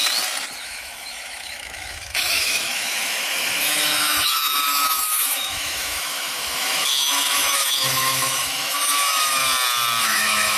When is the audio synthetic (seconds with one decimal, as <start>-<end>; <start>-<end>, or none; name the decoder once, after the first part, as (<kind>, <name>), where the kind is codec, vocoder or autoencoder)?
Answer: 0.6-9.4 (autoencoder, DAC-VAE); 10.0-10.6